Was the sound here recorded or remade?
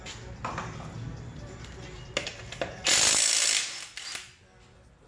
recorded